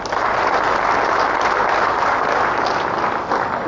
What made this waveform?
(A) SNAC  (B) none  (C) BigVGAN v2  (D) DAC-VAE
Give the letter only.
B